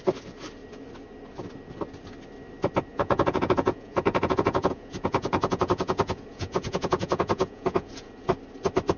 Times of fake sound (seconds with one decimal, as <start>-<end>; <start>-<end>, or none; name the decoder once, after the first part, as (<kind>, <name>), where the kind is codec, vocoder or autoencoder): 2.9-8.1 (vocoder, Vocos)